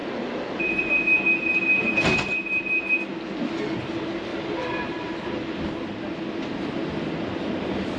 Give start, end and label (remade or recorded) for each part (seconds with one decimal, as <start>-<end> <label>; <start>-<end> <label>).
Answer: 0.0-0.9 remade; 0.9-4.3 recorded; 4.3-5.6 remade; 5.6-8.0 recorded